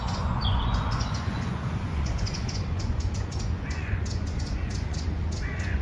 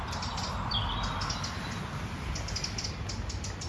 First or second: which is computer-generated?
first